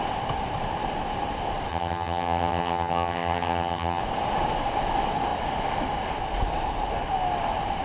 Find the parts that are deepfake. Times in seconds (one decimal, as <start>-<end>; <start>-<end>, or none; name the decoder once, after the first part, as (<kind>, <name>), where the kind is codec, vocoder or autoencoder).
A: 1.7-4.0 (vocoder, HiFi-GAN)